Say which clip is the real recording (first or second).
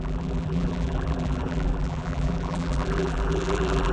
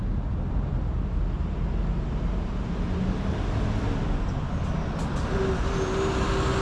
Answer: second